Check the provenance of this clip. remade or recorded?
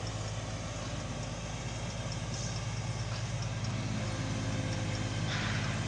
recorded